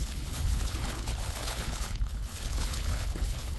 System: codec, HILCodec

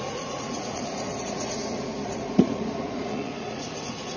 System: vocoder, Vocos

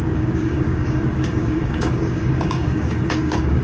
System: codec, DAC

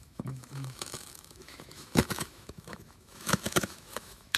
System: autoencoder, DAC-VAE